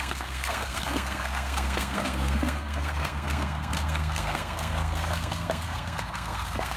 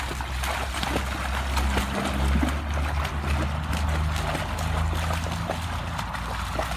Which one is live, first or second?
second